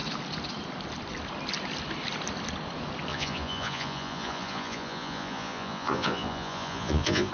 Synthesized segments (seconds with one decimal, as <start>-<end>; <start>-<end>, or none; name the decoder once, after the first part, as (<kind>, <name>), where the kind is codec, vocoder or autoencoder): 3.1-7.3 (vocoder, Vocos)